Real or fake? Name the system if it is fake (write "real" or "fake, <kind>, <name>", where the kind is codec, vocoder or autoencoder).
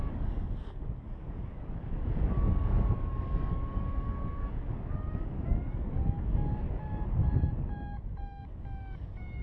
fake, codec, DAC